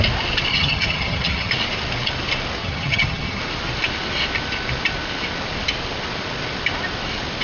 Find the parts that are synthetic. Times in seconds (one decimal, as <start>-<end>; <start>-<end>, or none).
0.5-1.5; 2.6-3.4